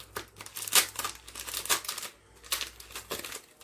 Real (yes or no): yes